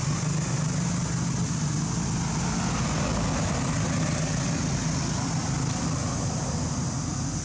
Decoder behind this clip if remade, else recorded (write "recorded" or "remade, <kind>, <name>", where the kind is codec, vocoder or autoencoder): recorded